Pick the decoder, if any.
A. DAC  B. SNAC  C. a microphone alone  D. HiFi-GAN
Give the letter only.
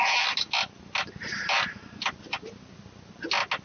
C